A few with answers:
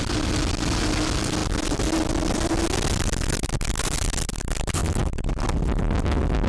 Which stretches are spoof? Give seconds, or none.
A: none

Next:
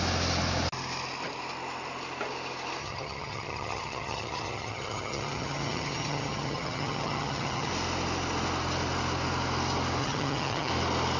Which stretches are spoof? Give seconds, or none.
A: 2.8-7.7 (vocoder, HiFi-GAN); 10.0-10.7

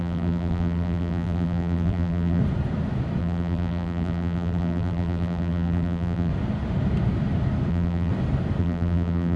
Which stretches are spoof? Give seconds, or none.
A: 0.0-2.4 (vocoder, BigVGAN v2); 3.2-6.3; 7.7-8.1; 8.6-9.4

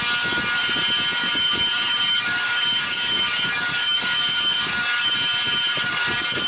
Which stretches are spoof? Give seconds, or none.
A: 1.2-5.1 (codec, DAC); 5.7-6.5

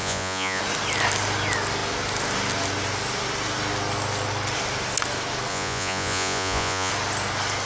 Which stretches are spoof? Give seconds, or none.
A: 0.0-0.6 (vocoder, Vocos); 5.5-6.9

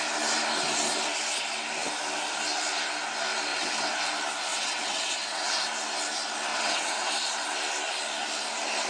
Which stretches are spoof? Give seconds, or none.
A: 3.5-4.0 (vocoder, WaveNeXt); 4.5-5.6; 6.5-7.1

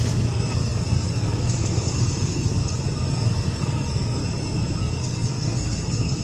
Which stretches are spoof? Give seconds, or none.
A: 0.0-2.6 (codec, SNAC); 3.1-4.2; 4.8-6.2

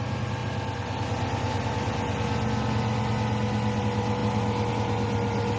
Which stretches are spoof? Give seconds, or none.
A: none